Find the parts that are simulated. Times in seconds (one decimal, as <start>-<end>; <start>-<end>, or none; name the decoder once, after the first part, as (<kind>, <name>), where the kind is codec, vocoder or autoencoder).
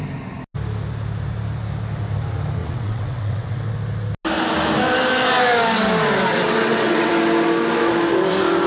2.6-3.7 (vocoder, WaveNeXt); 6.3-7.1